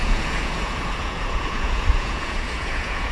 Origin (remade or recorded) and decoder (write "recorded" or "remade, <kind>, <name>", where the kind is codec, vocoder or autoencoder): remade, vocoder, Vocos